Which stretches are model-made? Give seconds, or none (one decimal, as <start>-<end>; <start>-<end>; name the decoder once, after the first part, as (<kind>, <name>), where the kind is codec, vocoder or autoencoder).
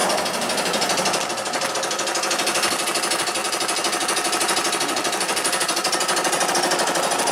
3.4-6.5 (vocoder, BigVGAN v2)